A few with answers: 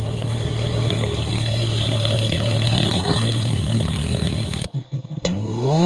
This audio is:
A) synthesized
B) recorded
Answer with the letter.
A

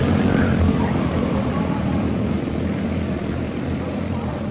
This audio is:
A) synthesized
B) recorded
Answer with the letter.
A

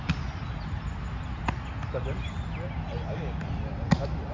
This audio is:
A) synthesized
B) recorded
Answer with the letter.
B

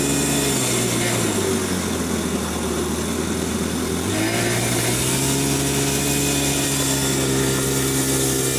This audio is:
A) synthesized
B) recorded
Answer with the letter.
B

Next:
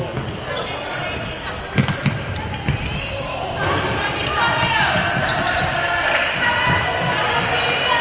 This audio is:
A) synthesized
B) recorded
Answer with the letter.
B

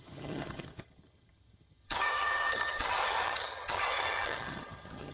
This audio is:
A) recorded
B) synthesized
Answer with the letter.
B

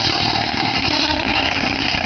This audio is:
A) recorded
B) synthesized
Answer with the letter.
B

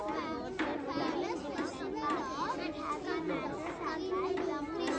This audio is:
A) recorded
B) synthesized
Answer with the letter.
A